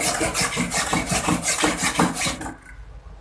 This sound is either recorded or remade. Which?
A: recorded